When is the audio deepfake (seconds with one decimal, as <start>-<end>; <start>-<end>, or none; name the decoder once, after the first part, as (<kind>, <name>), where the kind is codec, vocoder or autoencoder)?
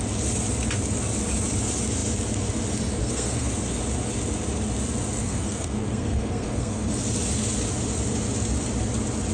3.0-3.5 (codec, SNAC); 5.2-6.9